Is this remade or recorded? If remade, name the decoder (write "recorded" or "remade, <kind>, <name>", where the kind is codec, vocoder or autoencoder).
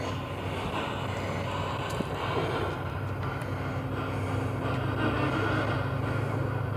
recorded